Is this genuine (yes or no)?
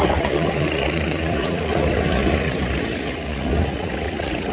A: no